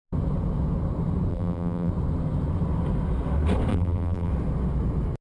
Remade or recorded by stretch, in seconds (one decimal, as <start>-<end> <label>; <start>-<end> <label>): 0.0-1.3 recorded; 1.3-1.9 remade; 1.9-3.7 recorded; 3.7-4.3 remade; 4.3-5.2 recorded